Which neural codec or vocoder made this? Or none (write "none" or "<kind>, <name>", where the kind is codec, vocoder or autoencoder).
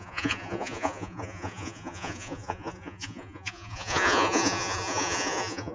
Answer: vocoder, Vocos